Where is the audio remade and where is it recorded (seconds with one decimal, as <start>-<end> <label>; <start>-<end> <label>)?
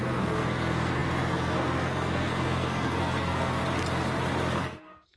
0.0-3.6 remade; 3.6-4.6 recorded; 4.6-5.2 remade